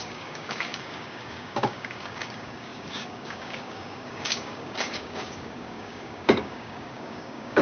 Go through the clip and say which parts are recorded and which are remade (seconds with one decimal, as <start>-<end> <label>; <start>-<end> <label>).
0.0-7.6 remade